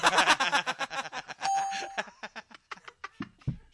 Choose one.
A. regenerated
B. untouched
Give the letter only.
B